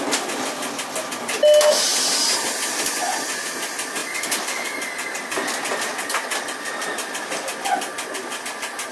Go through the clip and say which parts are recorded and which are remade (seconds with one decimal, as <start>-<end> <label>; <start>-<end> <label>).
0.0-8.9 recorded